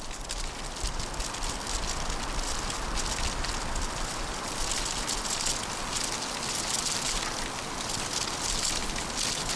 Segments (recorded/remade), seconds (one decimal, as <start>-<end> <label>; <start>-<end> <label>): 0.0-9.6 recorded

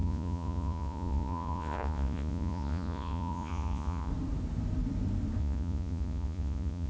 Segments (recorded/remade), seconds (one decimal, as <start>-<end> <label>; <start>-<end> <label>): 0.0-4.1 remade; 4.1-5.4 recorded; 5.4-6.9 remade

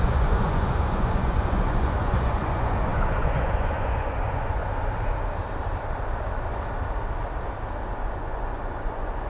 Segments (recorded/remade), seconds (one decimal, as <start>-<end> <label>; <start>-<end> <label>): 0.0-4.6 remade; 4.6-7.9 recorded; 7.9-9.3 remade

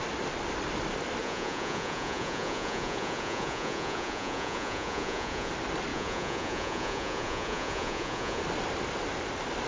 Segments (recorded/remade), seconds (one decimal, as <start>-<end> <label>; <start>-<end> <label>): 0.0-1.2 recorded; 1.2-5.5 remade; 5.5-5.9 recorded; 5.9-8.4 remade; 8.4-9.7 recorded

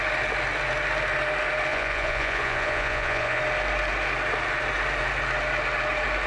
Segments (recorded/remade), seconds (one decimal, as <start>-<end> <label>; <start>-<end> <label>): 0.0-1.7 recorded; 1.7-3.4 remade; 3.4-6.3 recorded

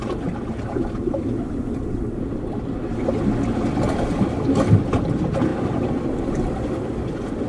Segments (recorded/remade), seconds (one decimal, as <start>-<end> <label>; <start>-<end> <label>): 0.0-7.5 recorded